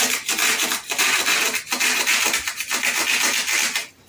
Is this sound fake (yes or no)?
no